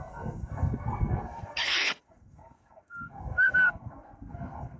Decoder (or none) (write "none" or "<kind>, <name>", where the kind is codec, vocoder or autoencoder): codec, SNAC